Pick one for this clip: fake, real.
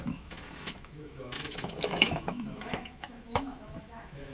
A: fake